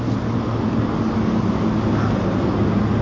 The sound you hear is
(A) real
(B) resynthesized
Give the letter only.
A